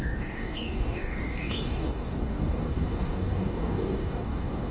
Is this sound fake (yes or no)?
yes